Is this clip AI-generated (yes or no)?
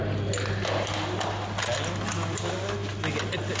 no